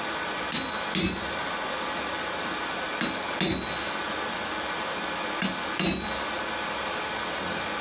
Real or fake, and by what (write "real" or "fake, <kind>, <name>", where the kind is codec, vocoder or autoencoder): real